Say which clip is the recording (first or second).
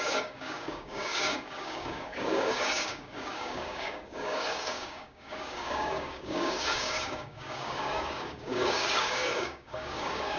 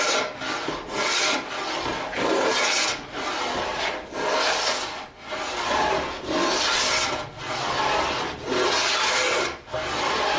second